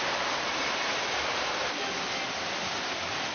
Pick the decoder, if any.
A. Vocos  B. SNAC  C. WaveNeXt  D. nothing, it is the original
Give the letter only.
D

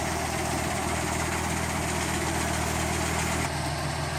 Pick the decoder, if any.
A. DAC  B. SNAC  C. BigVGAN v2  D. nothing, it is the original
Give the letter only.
D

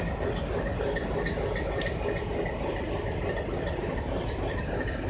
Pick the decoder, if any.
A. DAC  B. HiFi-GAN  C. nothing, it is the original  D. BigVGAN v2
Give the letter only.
C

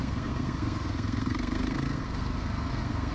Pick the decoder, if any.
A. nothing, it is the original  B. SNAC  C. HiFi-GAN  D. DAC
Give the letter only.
B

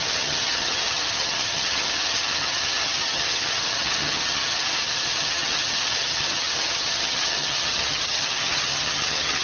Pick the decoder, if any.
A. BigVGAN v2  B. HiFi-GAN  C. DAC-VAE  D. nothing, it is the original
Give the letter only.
B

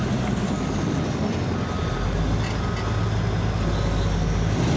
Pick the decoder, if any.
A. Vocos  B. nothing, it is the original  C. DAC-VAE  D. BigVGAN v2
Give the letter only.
B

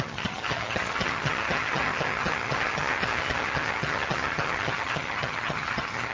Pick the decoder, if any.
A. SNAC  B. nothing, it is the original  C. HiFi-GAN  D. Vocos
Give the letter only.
C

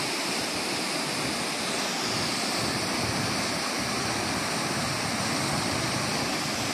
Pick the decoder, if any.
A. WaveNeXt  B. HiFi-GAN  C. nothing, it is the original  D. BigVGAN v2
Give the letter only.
C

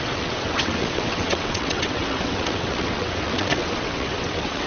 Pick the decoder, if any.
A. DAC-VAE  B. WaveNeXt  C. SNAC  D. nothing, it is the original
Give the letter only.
B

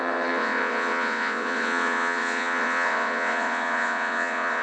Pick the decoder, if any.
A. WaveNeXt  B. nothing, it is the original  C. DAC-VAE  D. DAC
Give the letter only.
A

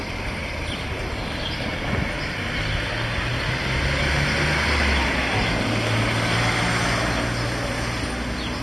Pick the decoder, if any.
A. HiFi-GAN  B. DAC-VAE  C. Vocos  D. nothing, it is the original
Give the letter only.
D